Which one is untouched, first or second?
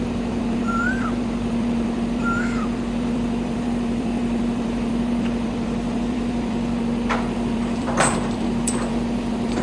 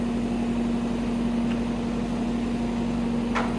second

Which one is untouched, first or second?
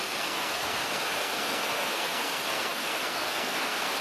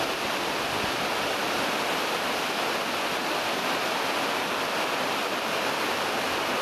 second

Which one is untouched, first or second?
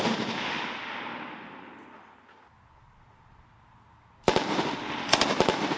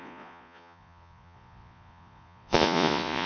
first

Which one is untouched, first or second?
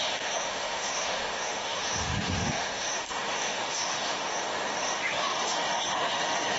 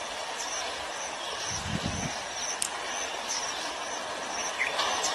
second